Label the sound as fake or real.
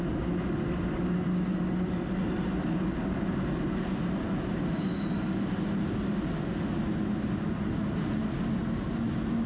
real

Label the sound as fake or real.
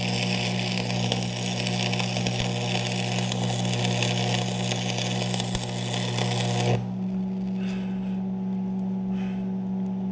real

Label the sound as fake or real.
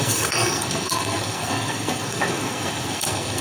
fake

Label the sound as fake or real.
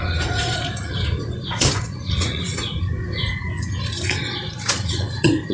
fake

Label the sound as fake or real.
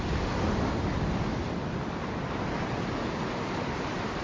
real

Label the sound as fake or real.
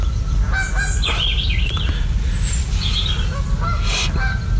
real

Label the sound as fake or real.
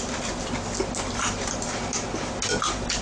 real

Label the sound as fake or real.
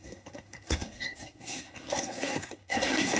fake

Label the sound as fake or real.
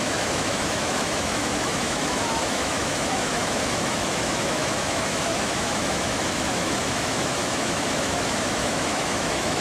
fake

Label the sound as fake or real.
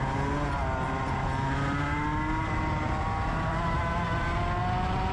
real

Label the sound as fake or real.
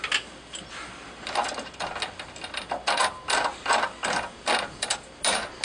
real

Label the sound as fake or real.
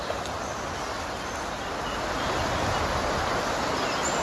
real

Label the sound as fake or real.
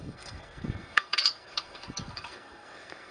fake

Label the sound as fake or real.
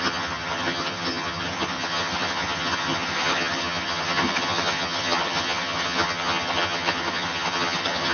fake